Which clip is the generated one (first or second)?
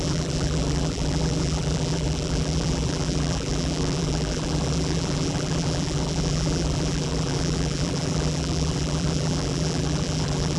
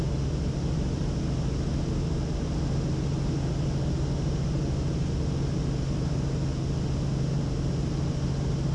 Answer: first